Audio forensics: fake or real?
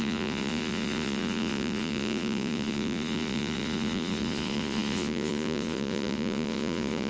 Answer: fake